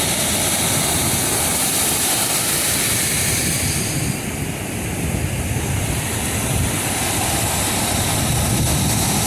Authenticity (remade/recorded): recorded